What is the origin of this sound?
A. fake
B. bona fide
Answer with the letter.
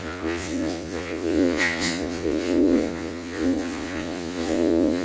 A